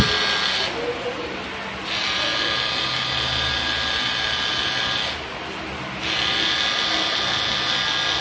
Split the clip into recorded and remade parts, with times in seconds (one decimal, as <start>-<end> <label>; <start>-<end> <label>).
0.0-8.2 recorded